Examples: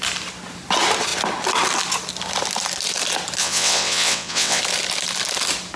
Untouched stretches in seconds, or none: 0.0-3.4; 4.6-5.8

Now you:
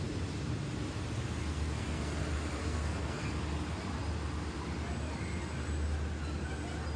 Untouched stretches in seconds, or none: 0.0-1.4; 2.2-2.6; 3.3-7.0

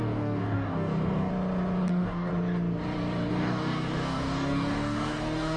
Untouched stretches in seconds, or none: 1.3-1.8; 2.3-3.3

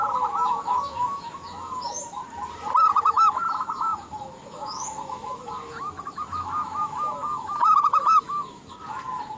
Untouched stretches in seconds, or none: 2.2-2.9

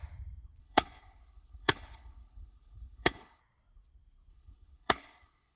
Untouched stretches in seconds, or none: 0.0-0.6; 3.4-4.3

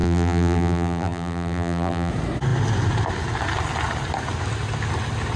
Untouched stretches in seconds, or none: 2.1-5.4